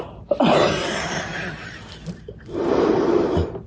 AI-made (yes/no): yes